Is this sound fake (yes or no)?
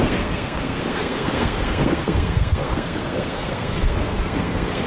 yes